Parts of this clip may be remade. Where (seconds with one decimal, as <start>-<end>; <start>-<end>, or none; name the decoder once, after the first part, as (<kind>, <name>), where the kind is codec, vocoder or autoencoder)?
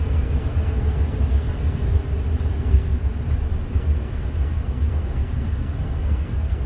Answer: 0.0-2.0 (codec, SNAC); 2.5-3.1; 3.7-6.7